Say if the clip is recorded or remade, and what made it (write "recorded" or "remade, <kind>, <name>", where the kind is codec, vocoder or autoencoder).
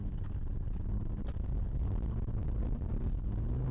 recorded